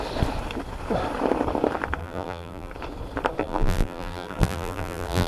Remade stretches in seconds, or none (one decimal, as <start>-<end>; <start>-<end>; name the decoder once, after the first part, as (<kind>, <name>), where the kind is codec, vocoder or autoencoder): 2.0-2.7 (vocoder, BigVGAN v2); 3.4-5.3